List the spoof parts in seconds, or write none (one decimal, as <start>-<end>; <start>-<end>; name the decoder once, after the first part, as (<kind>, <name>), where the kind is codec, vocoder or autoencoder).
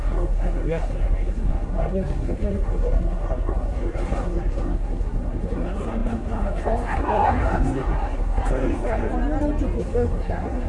0.0-9.1 (codec, SNAC); 9.8-10.7